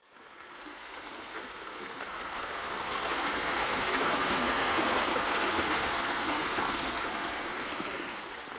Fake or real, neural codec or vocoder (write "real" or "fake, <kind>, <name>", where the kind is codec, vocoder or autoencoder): fake, codec, SNAC